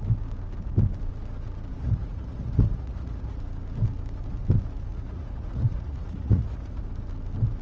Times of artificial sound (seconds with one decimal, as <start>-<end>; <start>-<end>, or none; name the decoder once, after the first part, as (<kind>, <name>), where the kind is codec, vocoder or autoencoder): 1.7-3.4 (vocoder, Vocos); 4.9-6.8